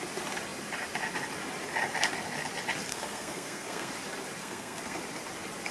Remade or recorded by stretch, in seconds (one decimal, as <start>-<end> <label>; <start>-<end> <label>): 0.0-2.9 recorded; 2.9-3.9 remade; 3.9-4.4 recorded; 4.4-5.0 remade; 5.0-5.7 recorded